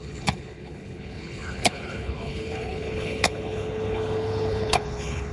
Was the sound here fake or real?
fake